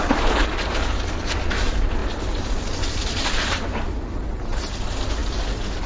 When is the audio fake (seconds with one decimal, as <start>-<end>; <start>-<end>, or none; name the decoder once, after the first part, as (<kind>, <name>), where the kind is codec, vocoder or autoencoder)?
none